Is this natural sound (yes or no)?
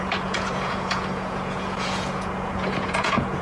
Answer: no